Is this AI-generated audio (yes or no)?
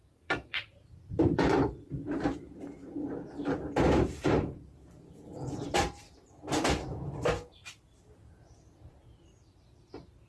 yes